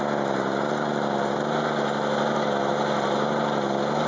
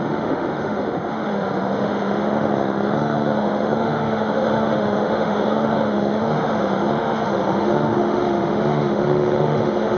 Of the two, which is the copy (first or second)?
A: second